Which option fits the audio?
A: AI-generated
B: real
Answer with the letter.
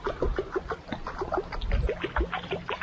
B